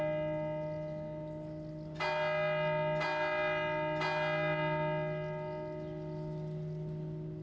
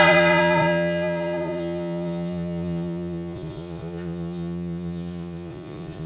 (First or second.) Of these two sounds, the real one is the first